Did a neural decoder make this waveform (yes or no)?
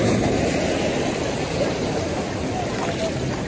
no